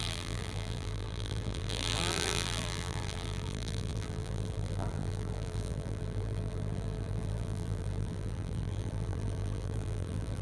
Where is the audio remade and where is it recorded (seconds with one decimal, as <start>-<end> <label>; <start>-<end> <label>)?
0.0-10.4 remade